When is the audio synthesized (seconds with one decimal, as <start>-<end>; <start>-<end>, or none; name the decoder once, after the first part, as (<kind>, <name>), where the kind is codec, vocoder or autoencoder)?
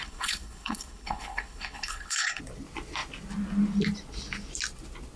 0.0-2.4 (codec, HILCodec)